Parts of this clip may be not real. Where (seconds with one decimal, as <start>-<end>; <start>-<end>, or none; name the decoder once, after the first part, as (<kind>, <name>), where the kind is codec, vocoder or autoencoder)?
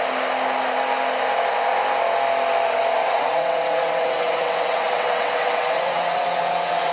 3.0-6.9 (vocoder, WaveNeXt)